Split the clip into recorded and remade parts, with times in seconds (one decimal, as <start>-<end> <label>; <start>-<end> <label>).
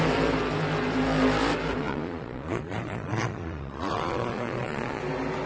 0.0-1.8 recorded; 1.8-5.0 remade; 5.0-5.5 recorded